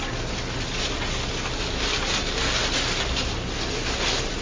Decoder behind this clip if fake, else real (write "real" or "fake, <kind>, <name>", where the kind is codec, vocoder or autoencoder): real